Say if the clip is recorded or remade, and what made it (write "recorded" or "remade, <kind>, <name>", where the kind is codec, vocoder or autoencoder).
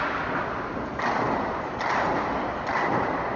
recorded